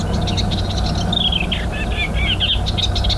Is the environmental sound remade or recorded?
recorded